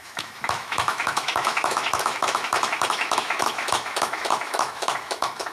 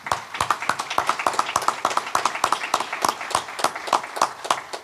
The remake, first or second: first